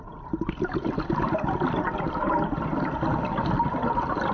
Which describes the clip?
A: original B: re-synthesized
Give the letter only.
A